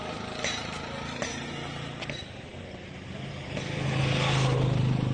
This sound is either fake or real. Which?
real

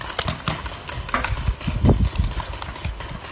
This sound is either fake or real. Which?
real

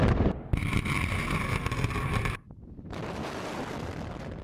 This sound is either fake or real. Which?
fake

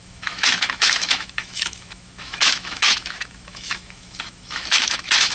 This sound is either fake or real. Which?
fake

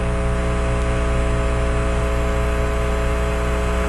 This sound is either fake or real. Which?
real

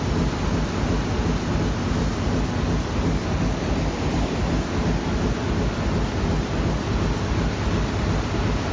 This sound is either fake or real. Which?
real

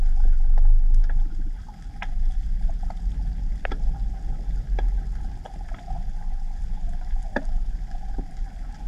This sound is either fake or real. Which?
real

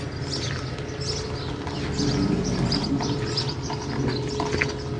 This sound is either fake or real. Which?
real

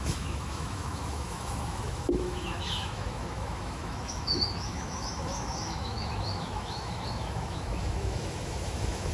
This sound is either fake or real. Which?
fake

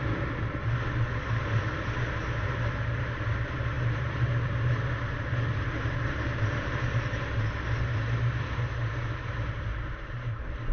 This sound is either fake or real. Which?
fake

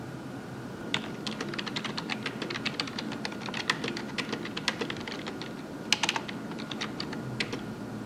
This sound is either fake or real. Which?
real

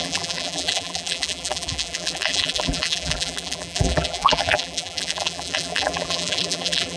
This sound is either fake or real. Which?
fake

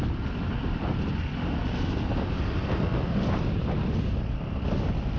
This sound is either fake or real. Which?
real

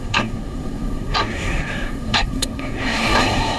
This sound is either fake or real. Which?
fake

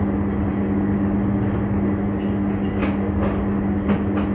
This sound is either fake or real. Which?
real